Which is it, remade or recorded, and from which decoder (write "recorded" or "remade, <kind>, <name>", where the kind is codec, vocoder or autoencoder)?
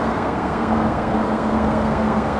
remade, codec, SNAC